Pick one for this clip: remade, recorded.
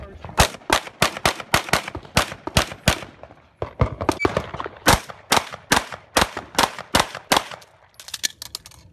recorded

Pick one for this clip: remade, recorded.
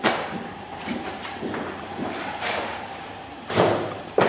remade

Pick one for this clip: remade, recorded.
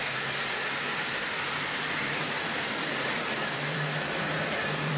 remade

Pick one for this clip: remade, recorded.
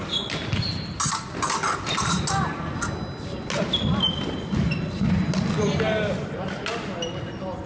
recorded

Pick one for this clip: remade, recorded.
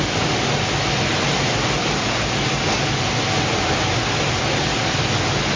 recorded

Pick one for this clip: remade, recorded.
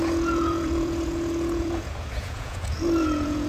remade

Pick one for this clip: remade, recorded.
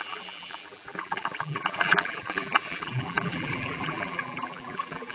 remade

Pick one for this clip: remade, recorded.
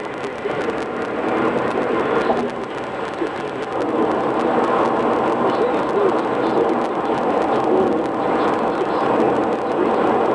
recorded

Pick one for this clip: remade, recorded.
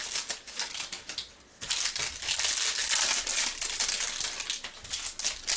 recorded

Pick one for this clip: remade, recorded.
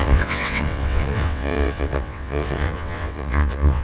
remade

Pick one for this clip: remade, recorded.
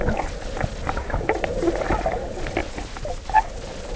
recorded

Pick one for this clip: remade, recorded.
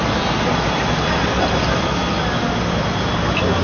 recorded